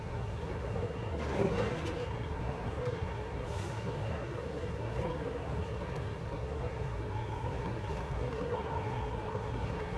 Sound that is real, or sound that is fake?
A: fake